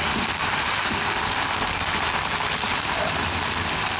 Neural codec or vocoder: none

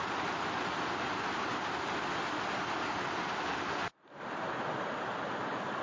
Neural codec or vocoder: none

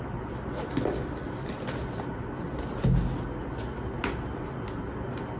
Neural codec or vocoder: none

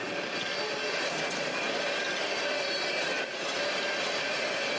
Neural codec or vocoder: none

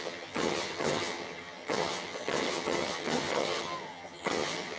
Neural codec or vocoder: vocoder, HiFi-GAN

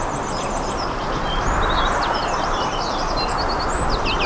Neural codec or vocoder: none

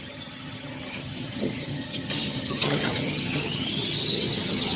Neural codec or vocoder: vocoder, HiFi-GAN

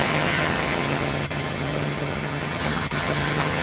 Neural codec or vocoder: vocoder, HiFi-GAN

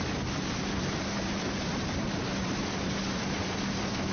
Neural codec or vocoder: none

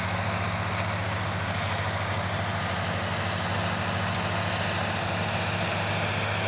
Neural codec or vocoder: none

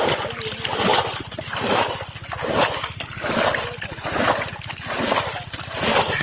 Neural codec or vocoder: none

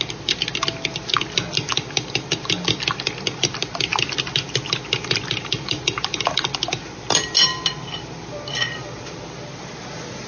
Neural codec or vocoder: none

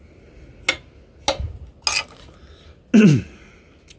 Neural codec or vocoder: none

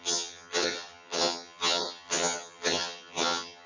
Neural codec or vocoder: vocoder, HiFi-GAN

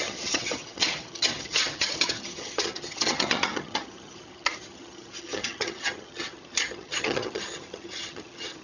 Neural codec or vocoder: vocoder, HiFi-GAN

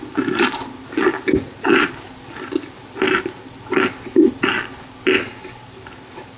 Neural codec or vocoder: none